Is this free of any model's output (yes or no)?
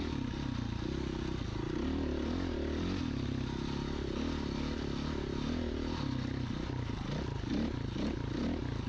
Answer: yes